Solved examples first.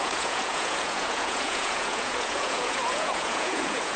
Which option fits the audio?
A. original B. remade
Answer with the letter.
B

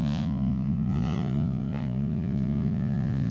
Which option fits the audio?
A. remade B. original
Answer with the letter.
A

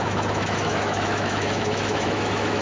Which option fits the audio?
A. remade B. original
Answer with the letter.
A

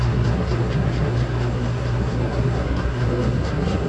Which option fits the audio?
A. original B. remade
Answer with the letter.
B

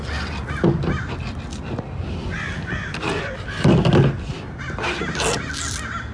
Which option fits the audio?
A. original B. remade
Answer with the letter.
A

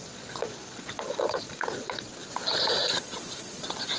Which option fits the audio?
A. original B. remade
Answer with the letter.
B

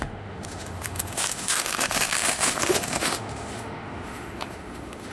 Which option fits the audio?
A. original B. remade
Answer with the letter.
B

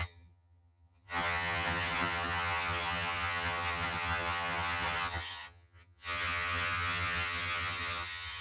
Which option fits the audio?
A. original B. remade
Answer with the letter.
B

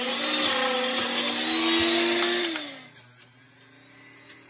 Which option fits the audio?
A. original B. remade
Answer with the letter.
A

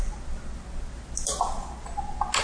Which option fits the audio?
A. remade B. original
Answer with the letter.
B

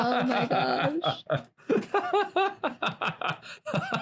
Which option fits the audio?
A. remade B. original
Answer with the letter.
B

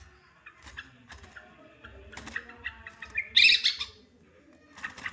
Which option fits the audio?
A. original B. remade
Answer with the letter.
A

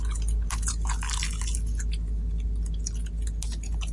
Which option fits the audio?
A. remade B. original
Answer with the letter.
B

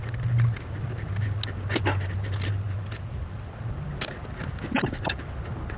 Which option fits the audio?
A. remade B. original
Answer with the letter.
B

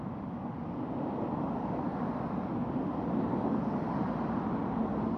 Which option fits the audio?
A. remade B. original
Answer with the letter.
B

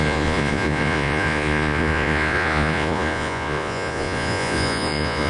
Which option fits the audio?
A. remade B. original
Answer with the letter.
A